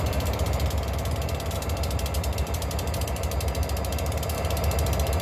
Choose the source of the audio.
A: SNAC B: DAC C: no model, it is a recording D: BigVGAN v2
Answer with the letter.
C